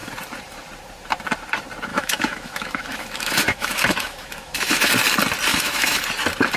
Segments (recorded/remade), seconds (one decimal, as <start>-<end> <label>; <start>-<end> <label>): 0.0-1.9 recorded; 1.9-4.9 remade; 4.9-5.5 recorded; 5.5-6.0 remade; 6.0-6.6 recorded